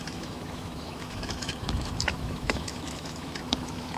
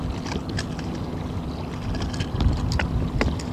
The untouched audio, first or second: second